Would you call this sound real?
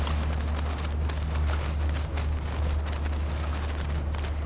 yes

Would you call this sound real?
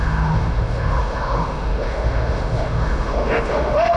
no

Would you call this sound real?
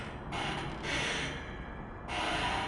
yes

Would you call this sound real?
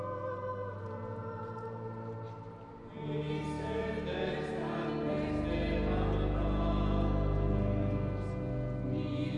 yes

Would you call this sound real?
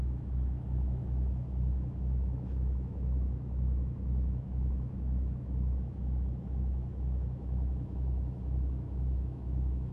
no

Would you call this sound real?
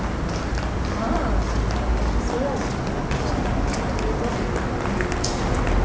yes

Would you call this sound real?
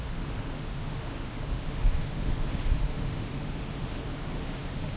no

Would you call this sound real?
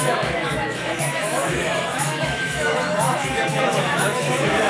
no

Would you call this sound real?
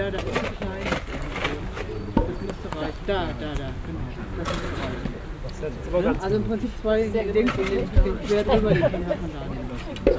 yes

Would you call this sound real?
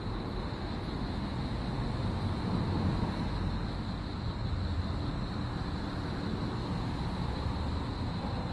yes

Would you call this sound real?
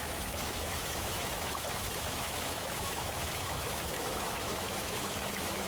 no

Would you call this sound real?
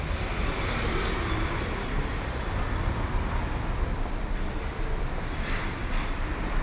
yes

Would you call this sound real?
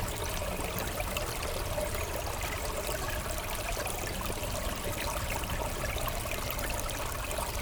yes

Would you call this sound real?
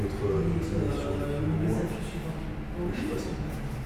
yes